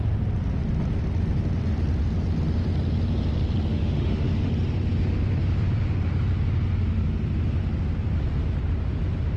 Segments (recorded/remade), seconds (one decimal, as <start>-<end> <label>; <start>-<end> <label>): 0.0-3.7 recorded; 3.7-4.5 remade; 4.5-9.4 recorded